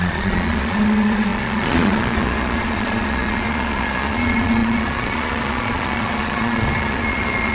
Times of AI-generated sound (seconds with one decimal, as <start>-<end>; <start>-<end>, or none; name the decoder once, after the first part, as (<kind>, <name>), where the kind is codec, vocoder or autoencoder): 0.0-7.5 (vocoder, Vocos)